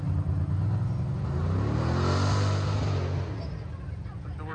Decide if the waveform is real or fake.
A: real